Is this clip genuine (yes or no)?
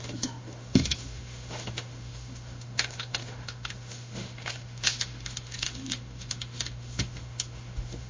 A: no